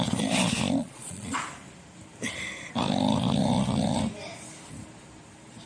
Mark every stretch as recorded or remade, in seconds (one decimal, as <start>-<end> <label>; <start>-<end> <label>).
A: 0.0-0.8 recorded; 0.8-1.4 remade; 1.4-5.7 recorded